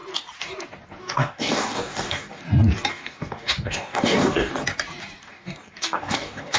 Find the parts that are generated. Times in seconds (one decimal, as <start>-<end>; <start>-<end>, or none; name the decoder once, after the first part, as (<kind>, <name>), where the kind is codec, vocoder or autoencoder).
1.0-2.4 (codec, DAC); 2.9-4.5; 5.3-6.6